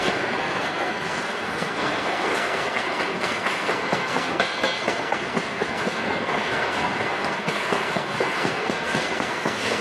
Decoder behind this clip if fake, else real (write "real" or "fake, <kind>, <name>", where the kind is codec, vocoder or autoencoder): fake, codec, SNAC